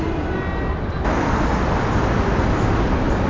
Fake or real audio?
real